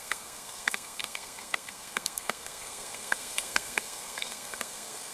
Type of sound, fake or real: fake